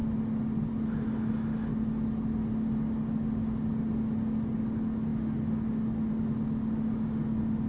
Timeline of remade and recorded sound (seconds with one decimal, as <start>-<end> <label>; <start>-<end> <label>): 0.0-7.7 recorded